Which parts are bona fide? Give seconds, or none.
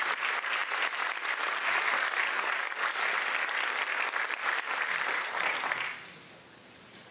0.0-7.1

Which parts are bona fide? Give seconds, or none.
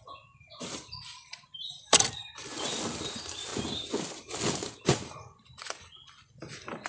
3.5-4.4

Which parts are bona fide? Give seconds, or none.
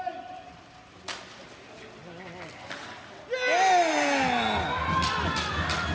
0.0-5.9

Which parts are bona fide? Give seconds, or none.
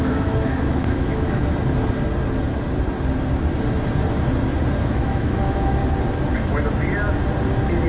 1.4-4.8; 5.8-7.9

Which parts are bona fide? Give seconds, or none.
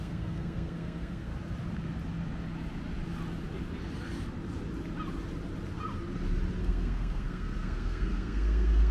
1.3-6.6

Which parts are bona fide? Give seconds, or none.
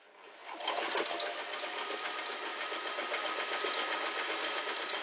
0.0-5.0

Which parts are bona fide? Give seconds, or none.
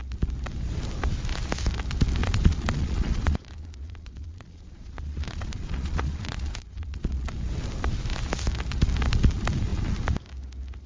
0.0-2.2; 7.3-10.9